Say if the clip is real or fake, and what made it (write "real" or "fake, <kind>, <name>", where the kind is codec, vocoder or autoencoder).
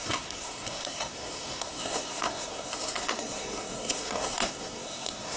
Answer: fake, codec, SNAC